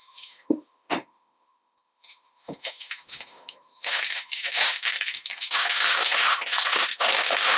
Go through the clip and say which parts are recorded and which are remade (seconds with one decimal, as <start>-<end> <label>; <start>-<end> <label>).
0.0-7.6 remade